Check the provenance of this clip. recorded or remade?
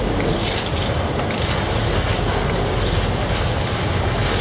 recorded